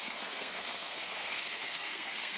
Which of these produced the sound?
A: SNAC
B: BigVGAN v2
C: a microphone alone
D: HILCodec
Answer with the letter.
A